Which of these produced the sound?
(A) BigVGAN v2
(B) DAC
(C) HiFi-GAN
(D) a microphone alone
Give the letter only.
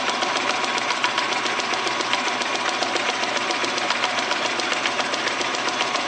D